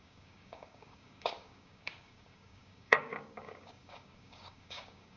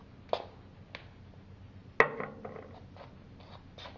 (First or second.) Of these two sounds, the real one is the second